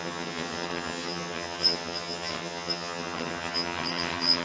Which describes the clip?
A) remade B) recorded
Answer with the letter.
A